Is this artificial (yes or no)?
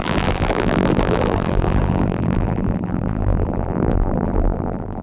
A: yes